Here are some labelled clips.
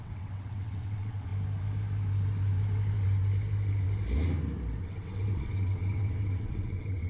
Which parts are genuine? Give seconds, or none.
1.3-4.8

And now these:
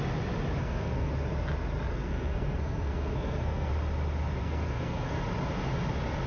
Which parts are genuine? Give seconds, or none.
0.0-0.6; 1.1-1.9; 3.7-4.4; 5.2-6.3

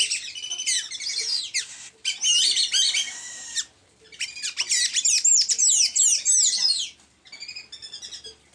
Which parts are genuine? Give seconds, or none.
0.0-3.8; 7.5-8.5